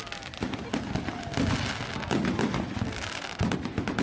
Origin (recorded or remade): recorded